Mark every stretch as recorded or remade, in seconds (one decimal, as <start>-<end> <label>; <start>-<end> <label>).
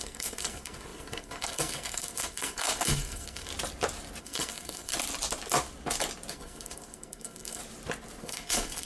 0.0-3.5 remade; 3.5-4.2 recorded; 4.2-4.9 remade; 4.9-6.3 recorded; 6.3-7.6 remade; 7.6-8.2 recorded; 8.2-8.8 remade